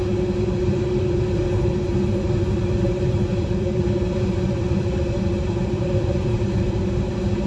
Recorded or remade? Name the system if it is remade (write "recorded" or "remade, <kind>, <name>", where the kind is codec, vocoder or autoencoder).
remade, vocoder, BigVGAN v2